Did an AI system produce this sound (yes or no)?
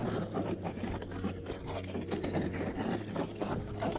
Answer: no